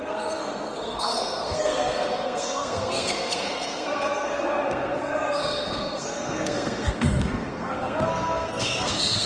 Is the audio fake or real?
fake